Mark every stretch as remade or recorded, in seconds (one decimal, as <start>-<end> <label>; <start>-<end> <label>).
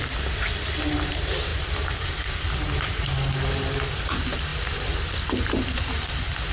0.0-6.5 recorded